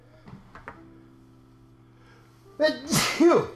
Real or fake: real